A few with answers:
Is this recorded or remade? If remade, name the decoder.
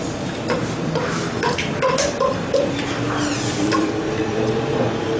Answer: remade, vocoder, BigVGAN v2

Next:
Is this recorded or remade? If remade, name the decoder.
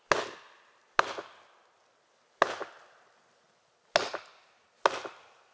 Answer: recorded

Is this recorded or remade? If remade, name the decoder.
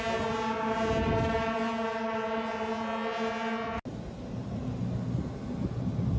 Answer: recorded